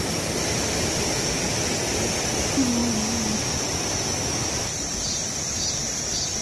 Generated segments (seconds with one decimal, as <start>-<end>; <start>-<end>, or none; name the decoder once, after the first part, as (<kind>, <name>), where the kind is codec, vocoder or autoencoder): none

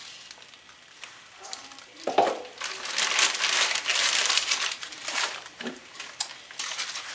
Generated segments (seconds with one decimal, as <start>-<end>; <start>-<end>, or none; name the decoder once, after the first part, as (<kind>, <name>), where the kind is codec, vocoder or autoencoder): 3.9-6.0 (vocoder, BigVGAN v2)

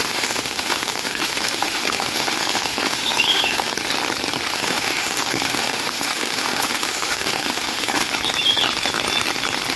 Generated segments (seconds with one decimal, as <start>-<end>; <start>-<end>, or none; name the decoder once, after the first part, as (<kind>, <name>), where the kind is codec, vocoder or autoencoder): 0.0-3.7 (autoencoder, DAC-VAE); 4.5-8.1

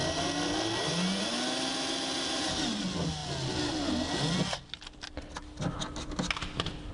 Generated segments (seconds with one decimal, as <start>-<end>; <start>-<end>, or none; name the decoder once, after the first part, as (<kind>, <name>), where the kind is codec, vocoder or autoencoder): none

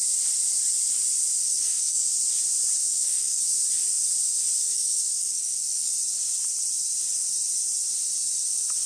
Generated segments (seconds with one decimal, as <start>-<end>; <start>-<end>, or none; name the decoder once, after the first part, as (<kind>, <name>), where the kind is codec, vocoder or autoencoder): 1.4-2.1 (codec, SNAC); 2.9-3.4; 4.6-5.9